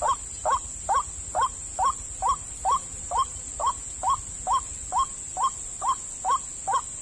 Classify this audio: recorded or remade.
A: recorded